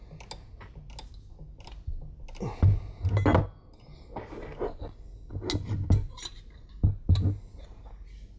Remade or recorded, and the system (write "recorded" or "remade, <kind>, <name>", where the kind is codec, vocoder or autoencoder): recorded